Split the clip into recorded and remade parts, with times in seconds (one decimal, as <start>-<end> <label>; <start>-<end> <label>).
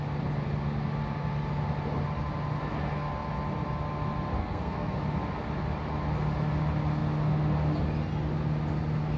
0.0-4.4 recorded; 4.4-5.0 remade; 5.0-9.2 recorded